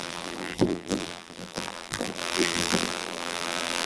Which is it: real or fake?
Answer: fake